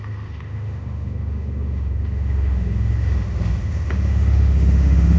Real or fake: fake